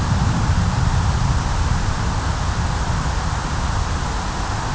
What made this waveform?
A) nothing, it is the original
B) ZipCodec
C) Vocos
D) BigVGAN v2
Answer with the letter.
A